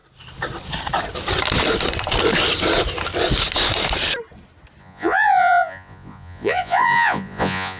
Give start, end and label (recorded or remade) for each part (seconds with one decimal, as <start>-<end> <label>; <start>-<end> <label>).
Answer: 0.0-4.8 recorded; 4.8-7.8 remade